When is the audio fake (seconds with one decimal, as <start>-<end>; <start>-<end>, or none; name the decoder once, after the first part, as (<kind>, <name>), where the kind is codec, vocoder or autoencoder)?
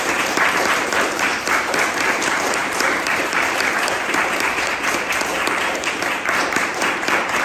0.0-1.3 (vocoder, BigVGAN v2); 2.0-7.4